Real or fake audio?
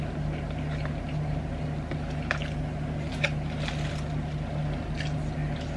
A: real